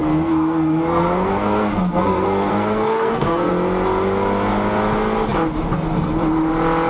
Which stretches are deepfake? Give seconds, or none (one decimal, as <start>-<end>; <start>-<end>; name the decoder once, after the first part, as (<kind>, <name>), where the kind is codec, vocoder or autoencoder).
0.0-3.5 (codec, SNAC)